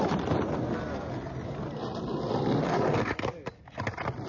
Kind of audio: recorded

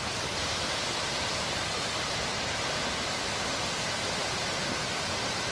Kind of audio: remade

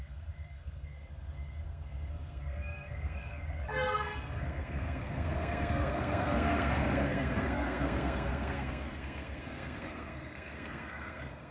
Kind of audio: remade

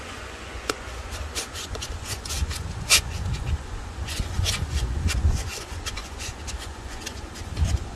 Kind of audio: remade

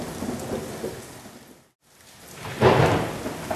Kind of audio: recorded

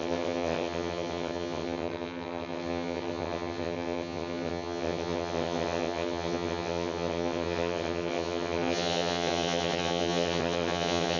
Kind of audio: remade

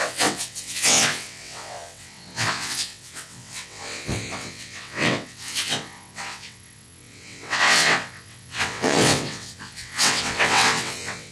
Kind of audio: remade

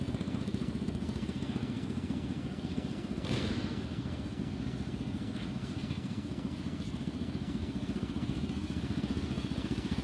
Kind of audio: remade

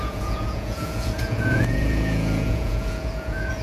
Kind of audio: remade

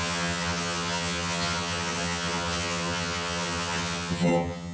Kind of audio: remade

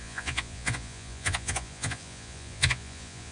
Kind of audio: remade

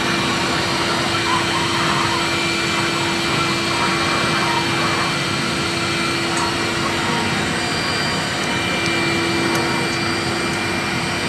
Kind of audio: recorded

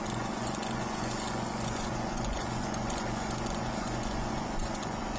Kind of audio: remade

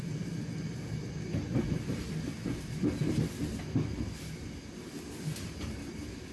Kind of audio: recorded